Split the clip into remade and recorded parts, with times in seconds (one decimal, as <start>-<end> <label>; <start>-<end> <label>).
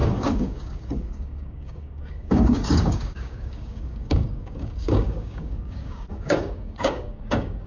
0.0-7.7 remade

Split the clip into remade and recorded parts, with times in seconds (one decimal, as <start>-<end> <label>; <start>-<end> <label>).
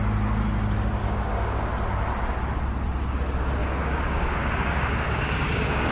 0.0-1.0 recorded; 1.0-1.7 remade; 1.7-3.6 recorded; 3.6-5.9 remade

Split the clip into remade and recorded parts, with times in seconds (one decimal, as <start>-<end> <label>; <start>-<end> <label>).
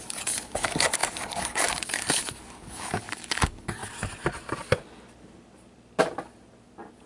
0.0-3.8 remade; 3.8-7.1 recorded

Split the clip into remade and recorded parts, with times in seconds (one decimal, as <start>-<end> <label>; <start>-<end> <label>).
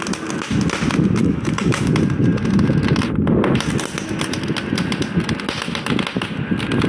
0.0-1.2 recorded; 1.2-1.9 remade; 1.9-6.9 recorded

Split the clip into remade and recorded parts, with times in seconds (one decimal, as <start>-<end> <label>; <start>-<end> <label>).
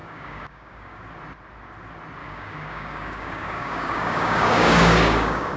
0.0-1.0 remade; 1.0-2.2 recorded; 2.2-5.6 remade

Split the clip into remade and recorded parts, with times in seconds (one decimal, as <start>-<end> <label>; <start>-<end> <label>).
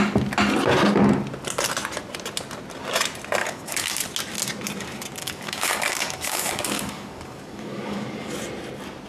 0.0-3.4 recorded; 3.4-4.0 remade; 4.0-5.2 recorded; 5.2-8.3 remade; 8.3-9.1 recorded